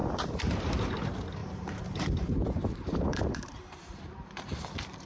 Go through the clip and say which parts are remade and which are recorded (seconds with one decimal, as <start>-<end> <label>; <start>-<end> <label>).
0.0-0.8 remade; 0.8-1.4 recorded; 1.4-4.5 remade; 4.5-5.1 recorded